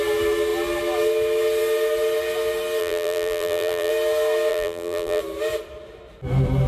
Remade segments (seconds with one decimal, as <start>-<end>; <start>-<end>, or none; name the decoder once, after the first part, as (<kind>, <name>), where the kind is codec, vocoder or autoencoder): 2.8-3.9 (vocoder, BigVGAN v2); 4.5-5.2